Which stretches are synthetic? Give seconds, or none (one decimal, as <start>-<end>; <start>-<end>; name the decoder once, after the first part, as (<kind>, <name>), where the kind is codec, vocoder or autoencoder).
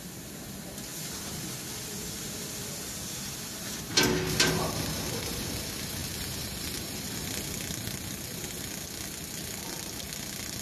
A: none